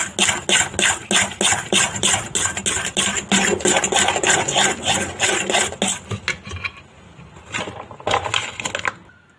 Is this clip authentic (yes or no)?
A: yes